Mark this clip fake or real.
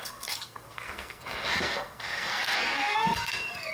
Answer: fake